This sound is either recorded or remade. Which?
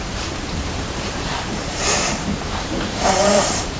remade